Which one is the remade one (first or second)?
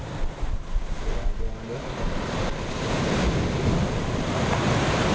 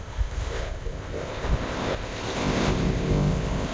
second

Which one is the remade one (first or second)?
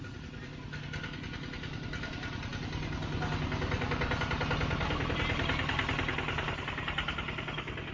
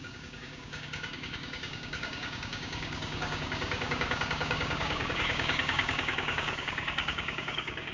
second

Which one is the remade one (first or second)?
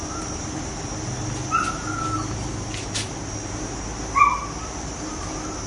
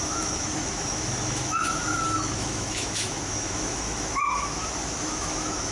second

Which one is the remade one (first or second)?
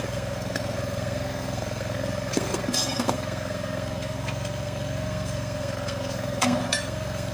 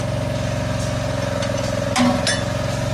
first